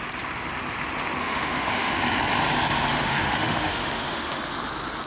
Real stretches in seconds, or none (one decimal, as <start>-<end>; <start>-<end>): 0.0-1.2; 1.9-2.9; 4.4-5.1

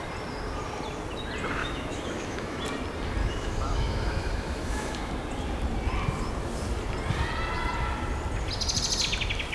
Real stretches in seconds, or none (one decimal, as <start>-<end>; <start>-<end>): 0.0-1.6; 2.6-3.2; 5.1-9.5

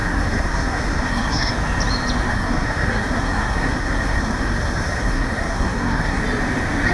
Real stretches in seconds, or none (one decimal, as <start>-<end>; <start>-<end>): 1.5-2.3; 6.2-6.9

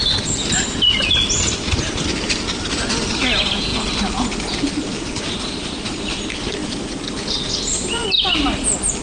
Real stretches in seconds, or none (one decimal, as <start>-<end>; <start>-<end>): 0.0-9.0

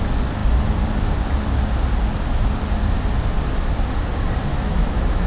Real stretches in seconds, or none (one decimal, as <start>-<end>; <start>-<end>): 0.0-4.5

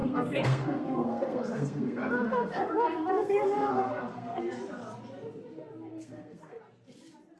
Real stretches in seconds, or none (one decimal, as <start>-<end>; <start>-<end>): 4.4-5.9; 6.6-7.4

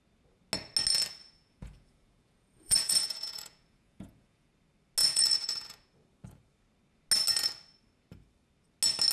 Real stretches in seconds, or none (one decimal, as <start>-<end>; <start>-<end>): 0.0-1.2; 4.5-5.0; 5.9-9.1